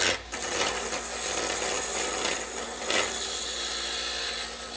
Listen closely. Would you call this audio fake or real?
real